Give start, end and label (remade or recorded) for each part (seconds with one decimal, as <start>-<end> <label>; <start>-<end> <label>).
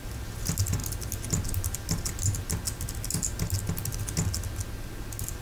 0.0-5.4 recorded